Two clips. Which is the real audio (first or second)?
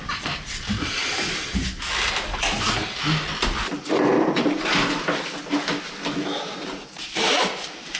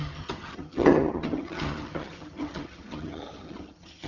first